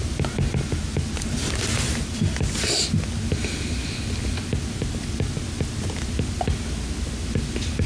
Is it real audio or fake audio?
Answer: real